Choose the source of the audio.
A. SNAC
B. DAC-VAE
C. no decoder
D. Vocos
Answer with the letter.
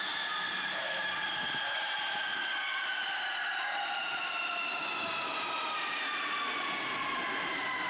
C